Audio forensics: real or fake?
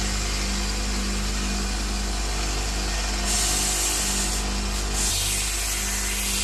real